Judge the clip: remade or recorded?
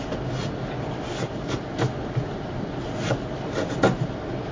recorded